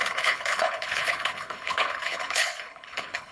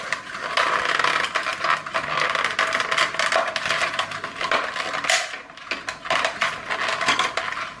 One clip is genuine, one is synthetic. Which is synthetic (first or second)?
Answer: first